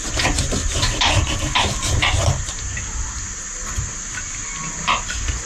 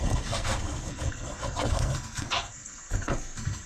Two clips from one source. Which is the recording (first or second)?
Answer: first